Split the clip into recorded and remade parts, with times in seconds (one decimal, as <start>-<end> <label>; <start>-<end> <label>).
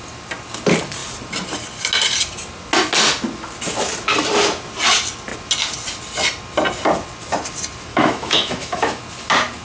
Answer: 0.0-7.9 recorded; 7.9-9.0 remade; 9.0-9.6 recorded